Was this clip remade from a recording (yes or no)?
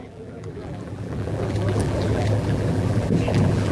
yes